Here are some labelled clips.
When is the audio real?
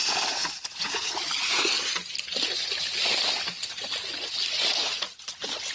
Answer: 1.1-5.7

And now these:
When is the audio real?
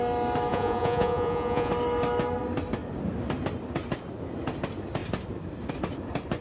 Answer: 0.0-0.5; 1.7-6.4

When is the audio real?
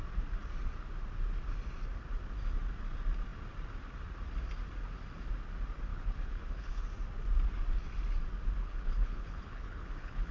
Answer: 0.0-5.9; 6.8-8.6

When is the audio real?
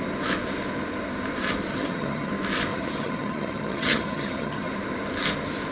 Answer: 0.0-1.7; 2.3-2.7; 4.7-5.7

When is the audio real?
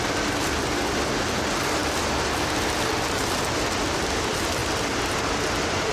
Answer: 0.0-5.9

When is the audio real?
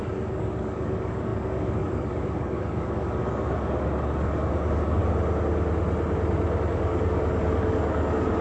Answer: 5.0-6.7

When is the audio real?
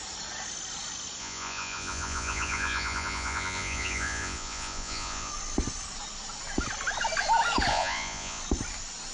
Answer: 0.0-1.2; 5.3-7.7; 8.4-9.1